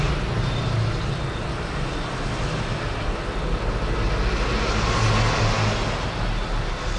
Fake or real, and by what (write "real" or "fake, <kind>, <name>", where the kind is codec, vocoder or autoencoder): real